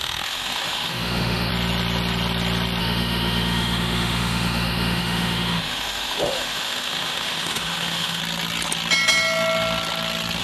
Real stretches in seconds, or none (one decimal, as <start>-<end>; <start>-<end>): 1.5-2.8; 8.2-10.4